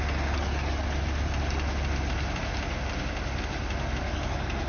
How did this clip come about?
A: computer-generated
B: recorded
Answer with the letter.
B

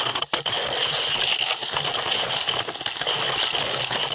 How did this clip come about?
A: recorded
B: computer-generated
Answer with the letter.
A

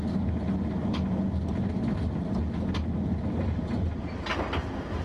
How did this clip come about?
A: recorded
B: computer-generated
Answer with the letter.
A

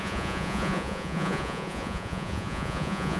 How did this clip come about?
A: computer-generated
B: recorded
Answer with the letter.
A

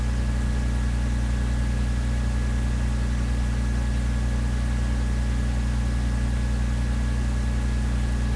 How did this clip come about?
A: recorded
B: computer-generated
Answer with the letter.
A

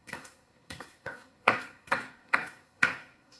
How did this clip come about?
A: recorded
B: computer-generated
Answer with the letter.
B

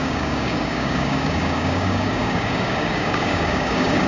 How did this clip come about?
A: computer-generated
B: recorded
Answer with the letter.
A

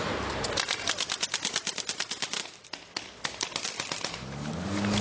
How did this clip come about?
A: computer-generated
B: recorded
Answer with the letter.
B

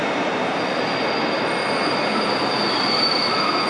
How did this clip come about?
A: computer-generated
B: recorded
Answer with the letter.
B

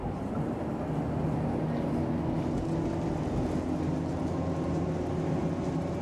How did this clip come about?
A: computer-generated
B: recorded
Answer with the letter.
B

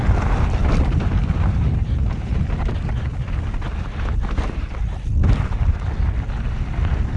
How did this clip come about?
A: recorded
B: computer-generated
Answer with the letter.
A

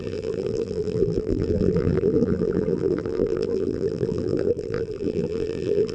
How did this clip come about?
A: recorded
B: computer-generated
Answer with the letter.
B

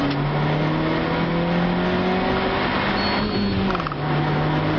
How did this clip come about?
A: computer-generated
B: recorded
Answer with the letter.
B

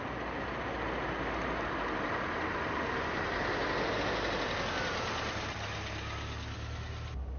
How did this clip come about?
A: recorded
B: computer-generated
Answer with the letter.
A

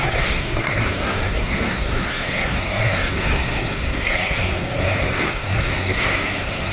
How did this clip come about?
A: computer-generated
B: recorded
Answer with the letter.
A